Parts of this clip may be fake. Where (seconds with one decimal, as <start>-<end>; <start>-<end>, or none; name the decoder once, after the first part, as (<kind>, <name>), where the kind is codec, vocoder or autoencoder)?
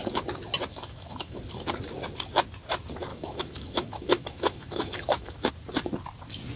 0.7-1.4 (autoencoder, DAC-VAE); 3.1-5.5